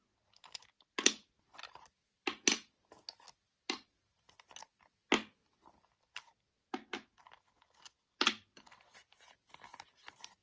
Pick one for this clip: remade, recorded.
recorded